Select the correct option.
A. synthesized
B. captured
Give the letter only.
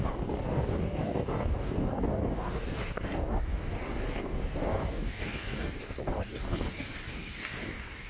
A